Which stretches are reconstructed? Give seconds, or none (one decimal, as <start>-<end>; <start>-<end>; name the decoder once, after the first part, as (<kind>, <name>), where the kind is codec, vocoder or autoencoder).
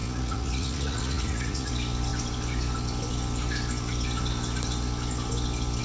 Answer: 0.0-1.7 (vocoder, Vocos)